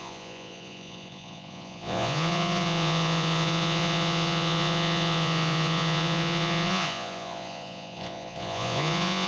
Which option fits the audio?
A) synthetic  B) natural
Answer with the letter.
A